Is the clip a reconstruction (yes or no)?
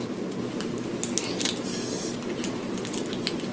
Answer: no